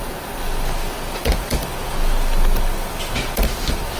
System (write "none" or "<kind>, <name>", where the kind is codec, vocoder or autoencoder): none